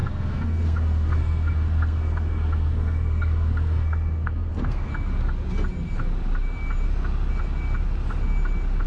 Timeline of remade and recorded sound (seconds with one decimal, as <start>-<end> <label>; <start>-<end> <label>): 0.0-4.9 remade; 4.9-8.9 recorded